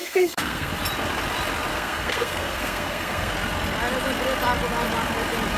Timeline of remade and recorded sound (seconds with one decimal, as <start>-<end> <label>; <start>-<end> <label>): 0.0-0.7 remade; 0.7-1.7 recorded; 1.7-3.3 remade; 3.3-5.6 recorded